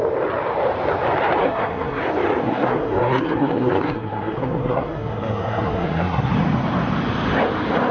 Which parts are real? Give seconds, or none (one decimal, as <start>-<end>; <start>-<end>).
0.0-1.4; 2.0-2.4; 6.3-7.9